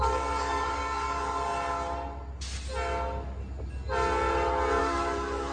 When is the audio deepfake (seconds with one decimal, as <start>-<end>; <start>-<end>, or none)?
0.0-1.5; 4.8-5.5